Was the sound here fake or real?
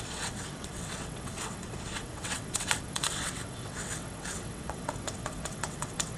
fake